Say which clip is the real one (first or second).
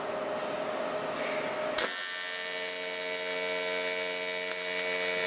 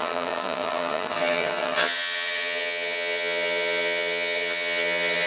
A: first